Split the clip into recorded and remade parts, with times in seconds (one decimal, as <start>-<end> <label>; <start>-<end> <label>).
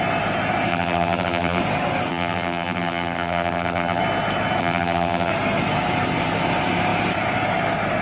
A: 0.0-0.7 recorded; 0.7-1.6 remade; 1.6-2.1 recorded; 2.1-4.0 remade; 4.0-4.6 recorded; 4.6-5.3 remade; 5.3-8.0 recorded